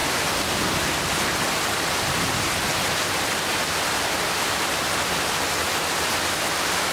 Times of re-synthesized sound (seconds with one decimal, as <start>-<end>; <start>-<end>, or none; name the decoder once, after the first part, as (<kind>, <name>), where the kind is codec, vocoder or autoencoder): none